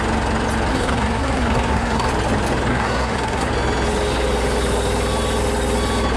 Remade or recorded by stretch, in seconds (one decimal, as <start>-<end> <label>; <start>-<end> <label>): 0.0-0.7 recorded; 0.7-2.1 remade; 2.1-2.7 recorded; 2.7-3.5 remade; 3.5-6.2 recorded